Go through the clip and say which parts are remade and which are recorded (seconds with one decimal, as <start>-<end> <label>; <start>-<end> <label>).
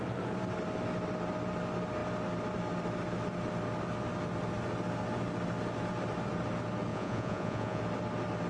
0.0-6.9 recorded; 6.9-7.8 remade; 7.8-8.5 recorded